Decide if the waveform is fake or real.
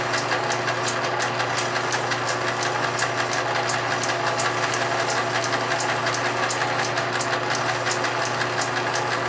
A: real